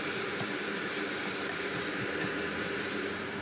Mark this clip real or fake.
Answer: real